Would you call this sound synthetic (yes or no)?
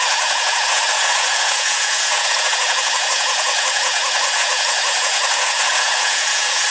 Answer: yes